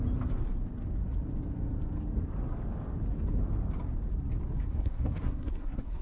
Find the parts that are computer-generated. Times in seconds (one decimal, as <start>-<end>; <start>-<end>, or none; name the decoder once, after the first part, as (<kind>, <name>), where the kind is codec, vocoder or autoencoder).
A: 4.6-6.0 (codec, SNAC)

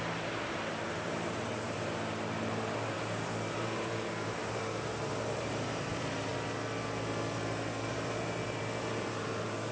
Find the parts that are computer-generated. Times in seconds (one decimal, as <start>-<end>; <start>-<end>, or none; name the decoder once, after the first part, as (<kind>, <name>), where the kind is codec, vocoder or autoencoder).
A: 0.0-6.3 (vocoder, BigVGAN v2); 7.9-9.7

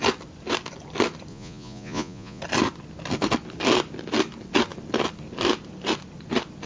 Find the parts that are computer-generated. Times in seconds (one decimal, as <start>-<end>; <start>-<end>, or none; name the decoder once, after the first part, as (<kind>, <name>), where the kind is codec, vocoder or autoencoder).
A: 1.3-2.4 (vocoder, Vocos)